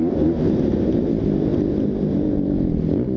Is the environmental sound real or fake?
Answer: real